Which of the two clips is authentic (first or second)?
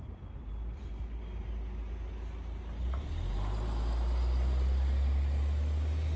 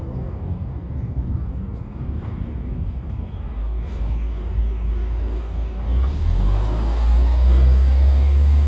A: first